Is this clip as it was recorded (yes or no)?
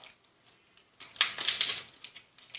yes